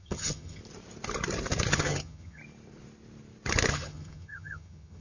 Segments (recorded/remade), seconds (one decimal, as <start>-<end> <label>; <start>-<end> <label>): 0.0-0.6 remade; 0.6-1.7 recorded; 1.7-2.4 remade; 2.4-3.7 recorded; 3.7-5.0 remade